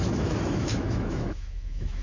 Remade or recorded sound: remade